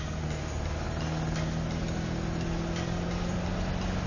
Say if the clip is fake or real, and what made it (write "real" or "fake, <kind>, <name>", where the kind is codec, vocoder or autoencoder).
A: real